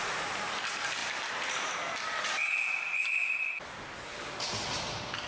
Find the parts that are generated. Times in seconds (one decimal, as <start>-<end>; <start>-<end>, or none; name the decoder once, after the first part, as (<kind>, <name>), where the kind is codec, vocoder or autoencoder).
none